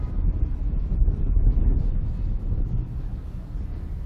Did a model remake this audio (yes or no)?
no